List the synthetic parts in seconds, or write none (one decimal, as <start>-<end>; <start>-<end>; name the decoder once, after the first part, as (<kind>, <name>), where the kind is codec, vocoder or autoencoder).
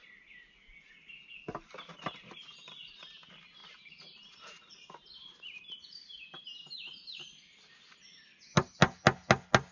3.6-8.0 (vocoder, BigVGAN v2)